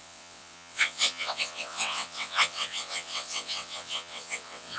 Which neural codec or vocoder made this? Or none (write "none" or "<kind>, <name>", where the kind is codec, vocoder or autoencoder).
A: vocoder, WaveNeXt